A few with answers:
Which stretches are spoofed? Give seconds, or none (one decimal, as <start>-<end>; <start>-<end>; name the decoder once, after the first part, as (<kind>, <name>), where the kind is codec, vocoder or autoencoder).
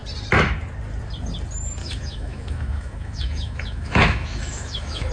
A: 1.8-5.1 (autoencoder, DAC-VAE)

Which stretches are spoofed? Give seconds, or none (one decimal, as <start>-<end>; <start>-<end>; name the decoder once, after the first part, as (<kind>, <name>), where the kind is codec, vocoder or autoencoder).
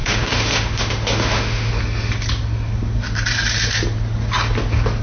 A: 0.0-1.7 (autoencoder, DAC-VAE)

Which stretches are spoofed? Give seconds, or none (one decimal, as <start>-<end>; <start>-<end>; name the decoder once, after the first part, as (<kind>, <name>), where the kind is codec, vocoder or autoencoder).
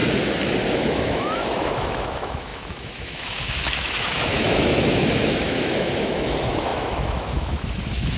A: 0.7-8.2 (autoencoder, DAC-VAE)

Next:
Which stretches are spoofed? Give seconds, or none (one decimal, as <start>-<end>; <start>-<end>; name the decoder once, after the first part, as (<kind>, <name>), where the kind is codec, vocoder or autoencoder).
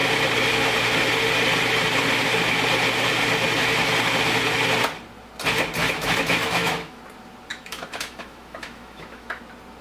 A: 5.8-7.0 (autoencoder, DAC-VAE); 7.5-9.4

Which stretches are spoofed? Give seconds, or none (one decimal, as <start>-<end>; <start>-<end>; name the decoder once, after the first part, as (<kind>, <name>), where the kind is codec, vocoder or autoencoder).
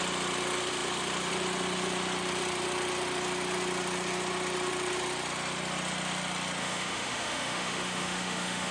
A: 6.6-8.7 (autoencoder, DAC-VAE)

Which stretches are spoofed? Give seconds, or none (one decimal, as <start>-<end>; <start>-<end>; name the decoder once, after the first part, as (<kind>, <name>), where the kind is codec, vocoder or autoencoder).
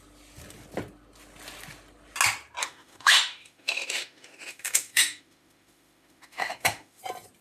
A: 2.6-7.0 (autoencoder, DAC-VAE)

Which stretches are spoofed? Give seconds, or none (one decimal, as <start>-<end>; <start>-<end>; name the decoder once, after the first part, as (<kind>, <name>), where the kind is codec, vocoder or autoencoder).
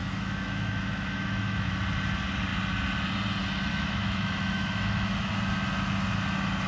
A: 0.0-1.7 (autoencoder, DAC-VAE); 3.7-5.3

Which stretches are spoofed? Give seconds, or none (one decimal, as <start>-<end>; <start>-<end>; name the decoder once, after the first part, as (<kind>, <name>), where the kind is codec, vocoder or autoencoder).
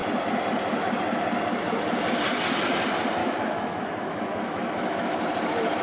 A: 3.2-5.2 (autoencoder, DAC-VAE)